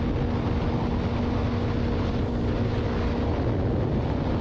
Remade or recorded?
recorded